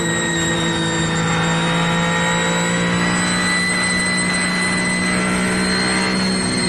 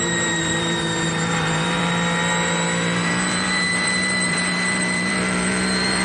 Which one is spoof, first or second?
second